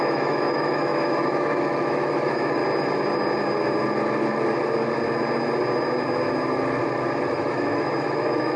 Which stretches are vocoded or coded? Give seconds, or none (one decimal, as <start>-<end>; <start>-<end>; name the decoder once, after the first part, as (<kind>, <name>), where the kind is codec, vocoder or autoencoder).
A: 0.0-2.6 (autoencoder, DAC-VAE); 7.3-8.6